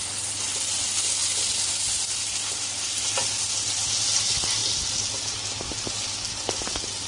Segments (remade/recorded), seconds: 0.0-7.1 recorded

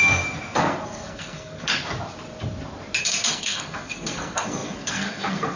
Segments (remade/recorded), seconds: 0.0-1.7 remade; 1.7-3.0 recorded; 3.0-5.6 remade

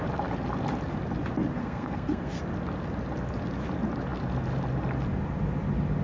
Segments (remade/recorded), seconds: 0.0-1.6 recorded; 1.6-2.4 remade; 2.4-6.0 recorded